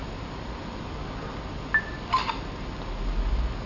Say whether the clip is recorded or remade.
recorded